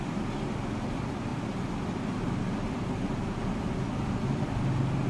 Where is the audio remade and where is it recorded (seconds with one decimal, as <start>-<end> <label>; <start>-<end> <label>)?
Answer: 0.0-5.1 recorded